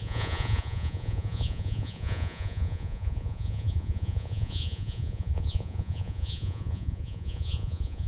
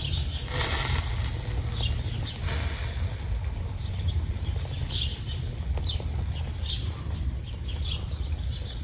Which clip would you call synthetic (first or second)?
first